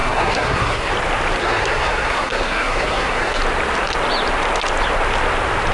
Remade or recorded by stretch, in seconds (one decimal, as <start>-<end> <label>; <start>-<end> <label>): 0.0-0.9 remade; 0.9-1.4 recorded; 1.4-3.4 remade; 3.4-5.7 recorded